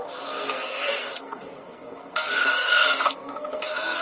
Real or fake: fake